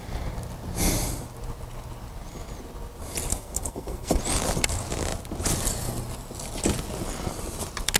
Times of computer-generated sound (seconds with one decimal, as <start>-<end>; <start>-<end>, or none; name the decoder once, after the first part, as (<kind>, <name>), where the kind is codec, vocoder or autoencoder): 3.3-4.2 (codec, SNAC)